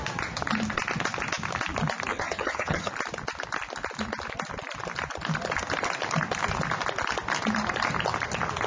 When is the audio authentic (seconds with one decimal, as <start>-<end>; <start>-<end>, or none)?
0.0-2.1; 2.9-8.7